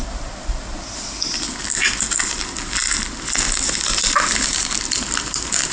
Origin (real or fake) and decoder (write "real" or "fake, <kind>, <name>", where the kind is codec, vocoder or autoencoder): real